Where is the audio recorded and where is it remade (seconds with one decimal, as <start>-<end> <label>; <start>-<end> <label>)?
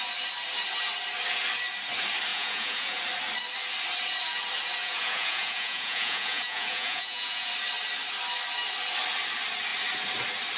0.0-2.3 recorded; 2.3-3.0 remade; 3.0-4.8 recorded; 4.8-7.5 remade; 7.5-10.6 recorded